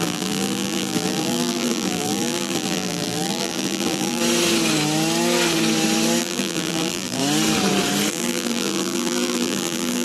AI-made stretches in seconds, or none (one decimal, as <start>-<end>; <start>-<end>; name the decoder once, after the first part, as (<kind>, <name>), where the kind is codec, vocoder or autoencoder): 0.0-4.2 (vocoder, BigVGAN v2); 6.2-7.2; 8.1-10.0